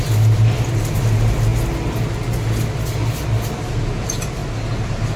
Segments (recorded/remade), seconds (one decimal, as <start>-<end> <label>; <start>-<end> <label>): 0.0-5.2 recorded